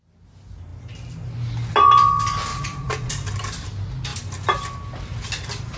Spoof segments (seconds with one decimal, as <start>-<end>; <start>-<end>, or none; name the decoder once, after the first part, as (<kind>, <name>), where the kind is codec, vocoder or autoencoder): 2.5-3.1 (vocoder, Vocos)

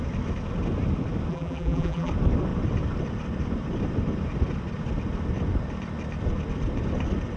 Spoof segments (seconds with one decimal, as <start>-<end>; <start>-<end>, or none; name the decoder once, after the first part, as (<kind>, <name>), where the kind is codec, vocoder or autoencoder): 1.3-2.1 (vocoder, BigVGAN v2)

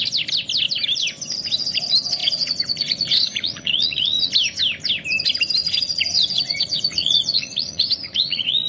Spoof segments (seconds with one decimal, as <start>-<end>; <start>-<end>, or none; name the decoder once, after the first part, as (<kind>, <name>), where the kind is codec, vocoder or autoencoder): 2.2-4.3 (vocoder, Vocos); 5.6-8.7